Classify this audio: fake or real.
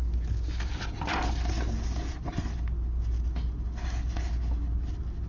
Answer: real